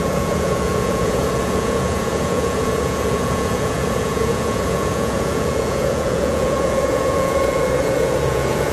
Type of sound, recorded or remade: remade